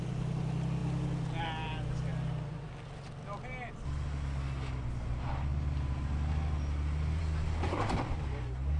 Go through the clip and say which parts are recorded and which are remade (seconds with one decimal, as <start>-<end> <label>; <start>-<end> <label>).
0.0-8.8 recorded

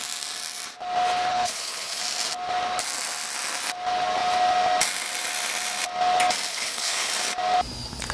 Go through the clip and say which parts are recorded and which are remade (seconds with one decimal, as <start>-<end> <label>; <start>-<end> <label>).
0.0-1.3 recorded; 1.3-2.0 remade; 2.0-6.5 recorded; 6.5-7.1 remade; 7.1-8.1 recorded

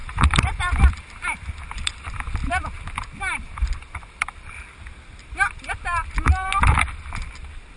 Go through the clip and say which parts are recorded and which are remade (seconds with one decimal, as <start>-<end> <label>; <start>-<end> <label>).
0.0-7.8 recorded

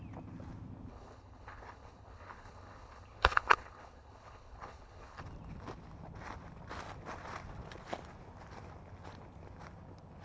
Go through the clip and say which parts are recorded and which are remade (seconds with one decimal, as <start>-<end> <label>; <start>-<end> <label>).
0.0-0.9 recorded; 0.9-5.2 remade; 5.2-10.2 recorded

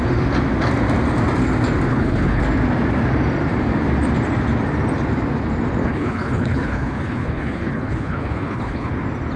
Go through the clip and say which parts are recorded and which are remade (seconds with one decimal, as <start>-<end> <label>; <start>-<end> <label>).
0.0-1.9 recorded; 1.9-2.4 remade; 2.4-5.8 recorded; 5.8-8.9 remade; 8.9-9.4 recorded

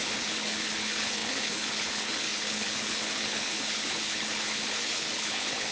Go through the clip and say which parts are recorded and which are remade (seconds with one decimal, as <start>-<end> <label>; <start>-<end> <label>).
0.0-5.7 remade